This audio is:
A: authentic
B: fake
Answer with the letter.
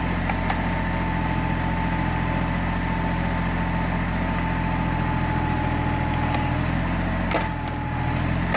A